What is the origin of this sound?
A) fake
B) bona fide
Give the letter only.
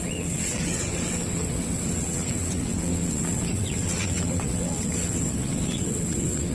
A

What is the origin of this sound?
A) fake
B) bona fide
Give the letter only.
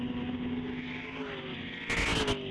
B